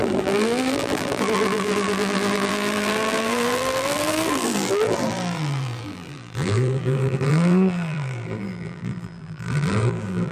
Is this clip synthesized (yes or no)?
yes